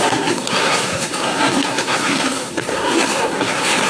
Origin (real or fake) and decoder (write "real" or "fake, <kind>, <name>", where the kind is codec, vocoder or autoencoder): fake, codec, SNAC